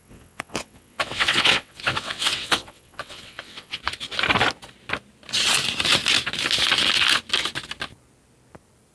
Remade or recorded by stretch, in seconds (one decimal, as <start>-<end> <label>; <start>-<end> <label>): 0.0-3.8 remade; 3.8-8.9 recorded